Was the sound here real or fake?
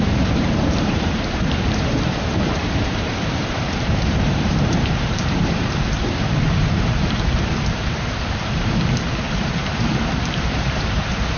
fake